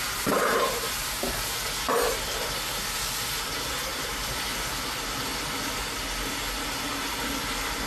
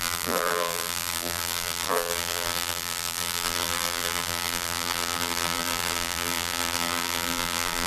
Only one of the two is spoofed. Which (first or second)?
second